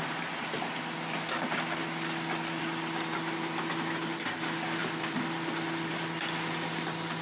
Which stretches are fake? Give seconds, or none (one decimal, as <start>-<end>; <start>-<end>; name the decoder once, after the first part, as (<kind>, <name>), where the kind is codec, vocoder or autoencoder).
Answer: none